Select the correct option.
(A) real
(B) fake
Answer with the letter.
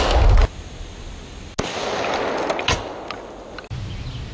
A